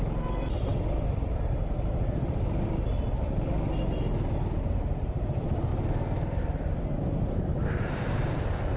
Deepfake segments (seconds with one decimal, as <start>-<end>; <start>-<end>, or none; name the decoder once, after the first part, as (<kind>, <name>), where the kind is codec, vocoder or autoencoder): none